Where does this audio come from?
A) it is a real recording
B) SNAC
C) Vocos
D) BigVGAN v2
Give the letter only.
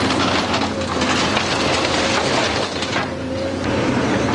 A